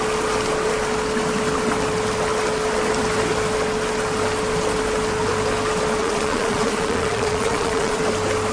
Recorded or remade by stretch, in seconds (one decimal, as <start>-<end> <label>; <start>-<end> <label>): 0.0-6.0 recorded; 6.0-8.0 remade; 8.0-8.5 recorded